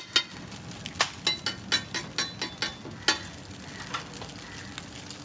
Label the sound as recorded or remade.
recorded